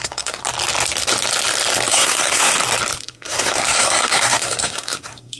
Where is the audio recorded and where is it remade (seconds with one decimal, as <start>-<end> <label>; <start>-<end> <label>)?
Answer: 0.0-0.4 remade; 0.4-1.9 recorded; 1.9-2.5 remade; 2.5-3.0 recorded; 3.0-5.4 remade